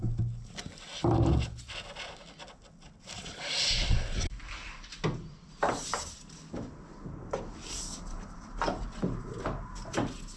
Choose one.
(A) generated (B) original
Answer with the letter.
B